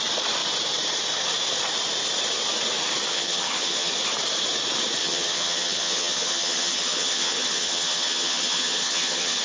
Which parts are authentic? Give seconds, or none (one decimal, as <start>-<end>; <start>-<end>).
0.0-3.1; 3.9-5.0